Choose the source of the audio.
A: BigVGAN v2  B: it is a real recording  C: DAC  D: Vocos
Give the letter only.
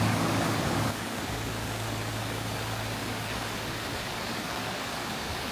C